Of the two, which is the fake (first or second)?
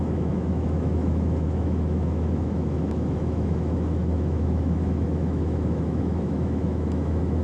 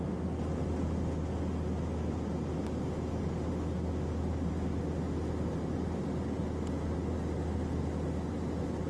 first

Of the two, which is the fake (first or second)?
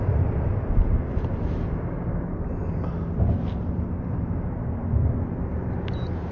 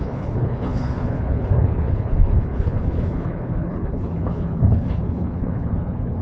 second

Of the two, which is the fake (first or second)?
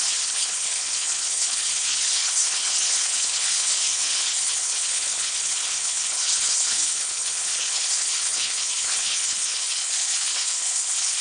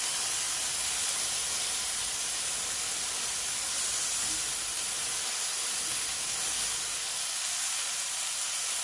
first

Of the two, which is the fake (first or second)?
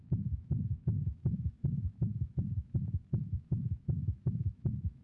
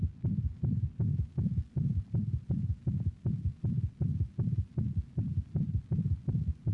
first